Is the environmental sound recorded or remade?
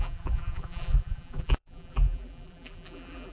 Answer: remade